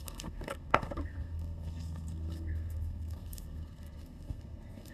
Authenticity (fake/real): fake